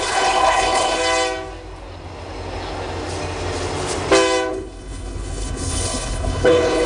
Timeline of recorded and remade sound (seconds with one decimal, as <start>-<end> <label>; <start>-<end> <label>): 0.0-1.0 remade; 1.0-4.5 recorded; 4.5-6.9 remade